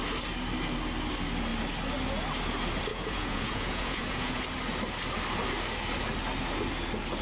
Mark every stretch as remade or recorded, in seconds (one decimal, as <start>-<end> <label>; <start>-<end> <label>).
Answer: 0.0-2.9 recorded; 2.9-4.4 remade; 4.4-7.2 recorded